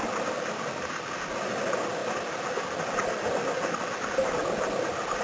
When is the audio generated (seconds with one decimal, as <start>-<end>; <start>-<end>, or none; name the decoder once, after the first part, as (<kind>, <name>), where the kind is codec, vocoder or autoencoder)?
none